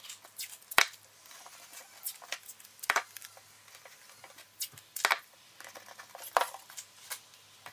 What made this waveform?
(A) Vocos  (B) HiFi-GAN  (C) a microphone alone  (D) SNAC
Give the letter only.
C